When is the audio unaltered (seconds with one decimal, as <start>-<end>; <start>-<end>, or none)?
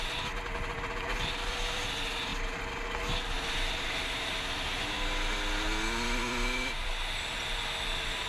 0.0-8.3